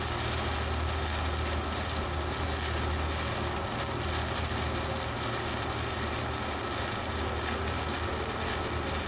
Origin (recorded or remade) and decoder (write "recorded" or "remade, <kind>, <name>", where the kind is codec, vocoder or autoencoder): recorded